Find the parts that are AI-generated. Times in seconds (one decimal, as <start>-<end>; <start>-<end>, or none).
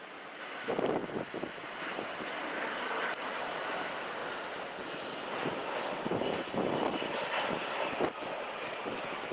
none